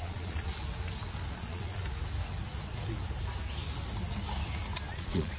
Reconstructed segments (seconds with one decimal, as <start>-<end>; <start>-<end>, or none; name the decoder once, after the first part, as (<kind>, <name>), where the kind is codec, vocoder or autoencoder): 0.0-0.5 (vocoder, Vocos); 1.3-1.8; 4.9-5.4